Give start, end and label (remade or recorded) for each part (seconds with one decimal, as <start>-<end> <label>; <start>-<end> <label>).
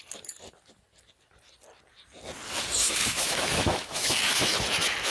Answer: 0.0-2.8 recorded; 2.8-4.5 remade; 4.5-5.1 recorded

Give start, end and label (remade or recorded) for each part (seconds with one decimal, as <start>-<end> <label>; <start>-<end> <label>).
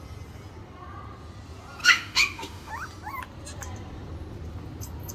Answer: 0.0-1.8 recorded; 1.8-2.7 remade; 2.7-5.1 recorded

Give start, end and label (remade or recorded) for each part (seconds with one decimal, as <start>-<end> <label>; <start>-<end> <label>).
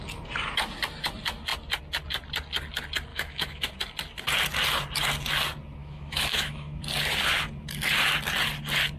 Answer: 0.0-3.1 recorded; 3.1-3.7 remade; 3.7-5.8 recorded; 5.8-6.8 remade; 6.8-9.0 recorded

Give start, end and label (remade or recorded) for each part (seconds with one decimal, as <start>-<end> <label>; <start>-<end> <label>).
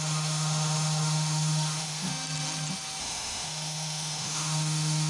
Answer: 0.0-2.1 remade; 2.1-3.0 recorded; 3.0-5.1 remade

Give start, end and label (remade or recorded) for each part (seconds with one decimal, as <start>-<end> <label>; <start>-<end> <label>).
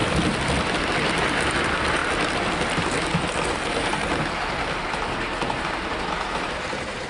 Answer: 0.0-7.1 recorded